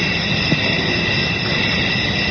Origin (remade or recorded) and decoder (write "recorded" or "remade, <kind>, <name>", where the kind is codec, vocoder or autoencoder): recorded